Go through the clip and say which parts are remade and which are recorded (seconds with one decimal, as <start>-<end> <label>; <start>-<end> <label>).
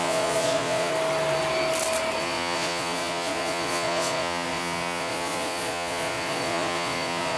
0.0-0.9 remade; 0.9-2.2 recorded; 2.2-7.4 remade